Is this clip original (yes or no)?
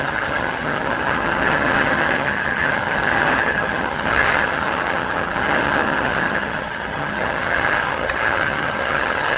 no